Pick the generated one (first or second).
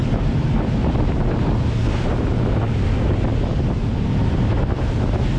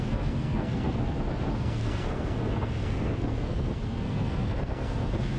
second